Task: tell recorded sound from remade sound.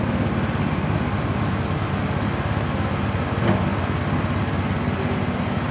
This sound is recorded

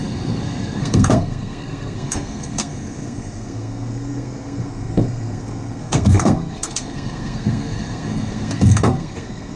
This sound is remade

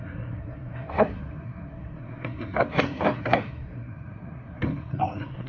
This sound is remade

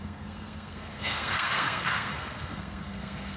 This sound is remade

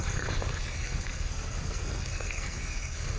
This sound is remade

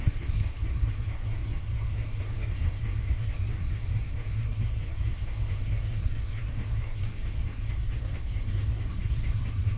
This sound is remade